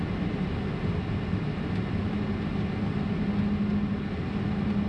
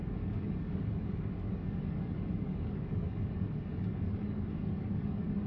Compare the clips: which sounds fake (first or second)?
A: second